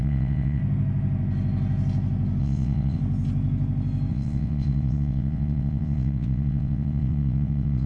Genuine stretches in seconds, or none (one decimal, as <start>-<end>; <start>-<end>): 0.6-2.4; 3.0-4.1